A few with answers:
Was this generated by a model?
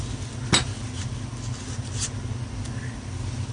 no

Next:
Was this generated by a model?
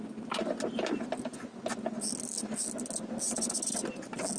no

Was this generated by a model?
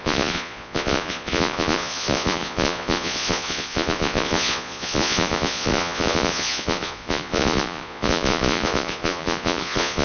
yes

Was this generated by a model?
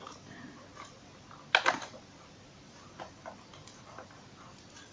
no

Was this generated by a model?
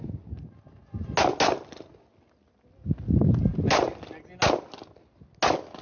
no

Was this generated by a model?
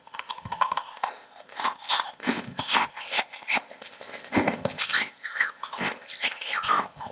yes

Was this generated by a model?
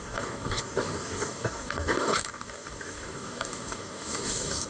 yes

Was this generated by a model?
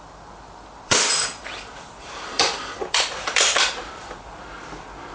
yes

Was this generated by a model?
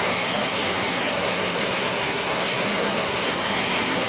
yes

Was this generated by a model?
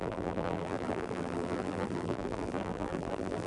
yes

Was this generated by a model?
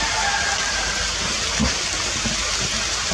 no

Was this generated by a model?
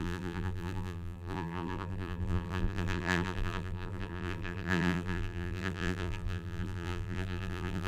yes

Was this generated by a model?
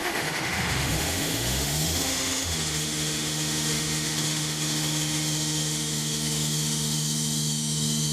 yes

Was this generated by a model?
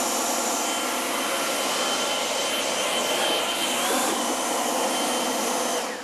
no